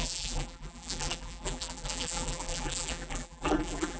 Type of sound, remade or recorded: remade